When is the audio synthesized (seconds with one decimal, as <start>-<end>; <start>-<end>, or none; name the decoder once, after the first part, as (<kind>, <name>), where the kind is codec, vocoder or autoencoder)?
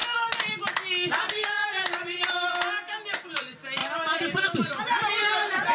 3.8-4.7 (vocoder, BigVGAN v2)